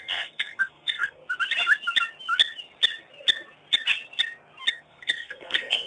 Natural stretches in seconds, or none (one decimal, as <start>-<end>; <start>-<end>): 1.2-4.7